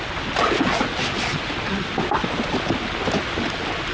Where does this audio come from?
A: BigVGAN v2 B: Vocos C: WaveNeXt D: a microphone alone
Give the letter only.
D